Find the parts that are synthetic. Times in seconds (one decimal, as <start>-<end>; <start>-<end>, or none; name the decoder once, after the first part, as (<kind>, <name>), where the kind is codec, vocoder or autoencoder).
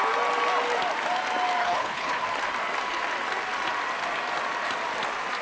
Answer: 1.6-2.2 (codec, HILCodec)